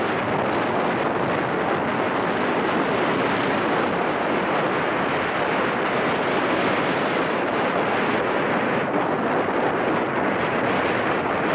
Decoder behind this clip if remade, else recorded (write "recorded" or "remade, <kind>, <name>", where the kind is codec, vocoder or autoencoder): recorded